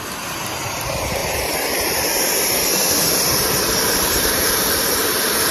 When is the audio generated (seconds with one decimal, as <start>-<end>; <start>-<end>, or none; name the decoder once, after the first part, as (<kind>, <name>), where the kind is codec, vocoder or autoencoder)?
1.2-4.5 (vocoder, BigVGAN v2)